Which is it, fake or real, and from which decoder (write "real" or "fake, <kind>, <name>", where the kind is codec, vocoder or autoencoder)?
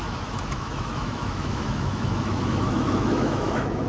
fake, autoencoder, DAC-VAE